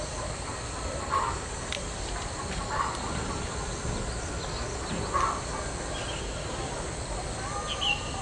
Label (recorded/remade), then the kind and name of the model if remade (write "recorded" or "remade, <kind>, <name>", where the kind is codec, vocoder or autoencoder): recorded